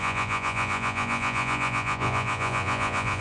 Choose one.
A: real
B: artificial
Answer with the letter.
B